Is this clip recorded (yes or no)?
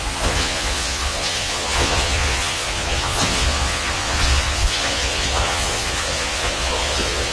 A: no